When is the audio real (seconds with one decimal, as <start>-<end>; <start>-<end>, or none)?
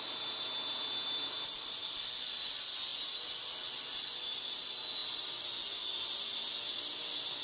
0.0-7.4